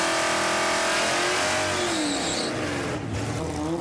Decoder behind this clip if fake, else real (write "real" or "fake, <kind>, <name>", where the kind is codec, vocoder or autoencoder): real